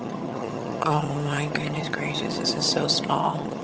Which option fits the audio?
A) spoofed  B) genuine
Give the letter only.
A